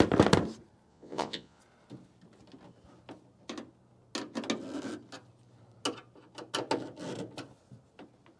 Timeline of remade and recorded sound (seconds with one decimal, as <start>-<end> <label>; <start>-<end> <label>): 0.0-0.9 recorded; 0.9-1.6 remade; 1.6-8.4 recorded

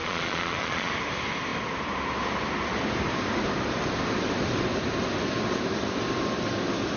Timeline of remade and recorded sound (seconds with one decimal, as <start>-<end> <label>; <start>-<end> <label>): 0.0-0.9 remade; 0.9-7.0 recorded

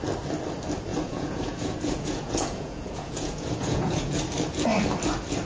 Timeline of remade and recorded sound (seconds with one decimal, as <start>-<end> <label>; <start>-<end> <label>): 0.0-0.9 recorded; 0.9-4.2 remade; 4.2-5.5 recorded

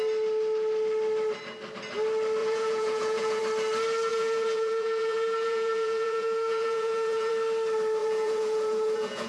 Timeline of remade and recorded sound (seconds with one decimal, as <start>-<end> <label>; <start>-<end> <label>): 0.0-2.4 recorded; 2.4-3.4 remade; 3.4-4.1 recorded; 4.1-7.3 remade; 7.3-8.0 recorded; 8.0-9.3 remade